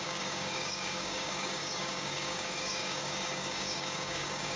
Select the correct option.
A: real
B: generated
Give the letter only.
B